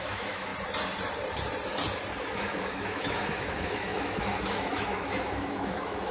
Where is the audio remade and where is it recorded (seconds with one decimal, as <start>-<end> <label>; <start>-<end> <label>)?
0.0-0.5 remade; 0.5-2.2 recorded; 2.2-6.1 remade